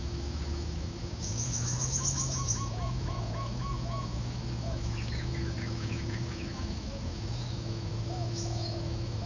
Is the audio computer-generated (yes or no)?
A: yes